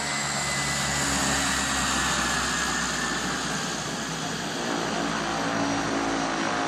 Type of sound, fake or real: real